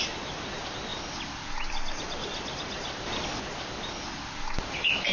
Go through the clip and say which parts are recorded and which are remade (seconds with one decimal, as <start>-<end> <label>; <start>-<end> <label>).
0.0-5.1 recorded